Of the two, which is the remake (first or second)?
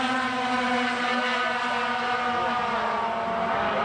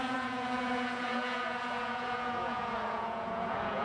second